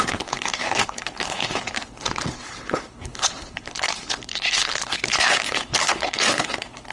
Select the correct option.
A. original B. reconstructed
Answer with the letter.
B